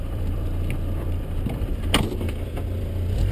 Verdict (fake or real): fake